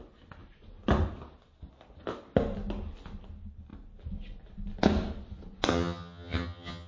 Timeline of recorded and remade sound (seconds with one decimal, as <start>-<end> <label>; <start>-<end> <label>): 0.0-5.7 recorded; 5.7-6.9 remade